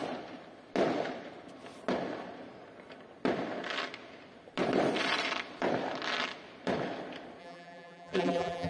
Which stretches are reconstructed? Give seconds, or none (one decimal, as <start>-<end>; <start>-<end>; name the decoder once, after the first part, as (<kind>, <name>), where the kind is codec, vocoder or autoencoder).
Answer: 7.4-8.7 (vocoder, BigVGAN v2)